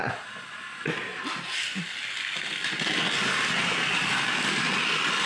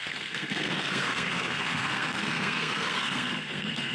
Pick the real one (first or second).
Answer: first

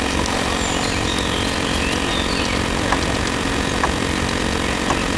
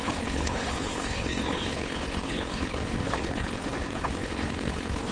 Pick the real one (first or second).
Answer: first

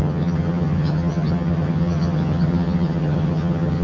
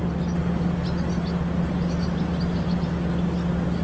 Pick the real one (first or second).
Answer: second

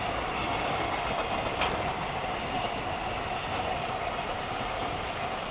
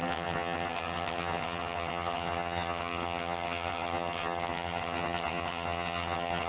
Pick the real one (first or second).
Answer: first